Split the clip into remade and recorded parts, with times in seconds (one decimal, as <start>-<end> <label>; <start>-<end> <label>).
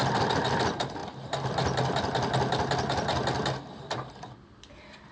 0.0-5.1 recorded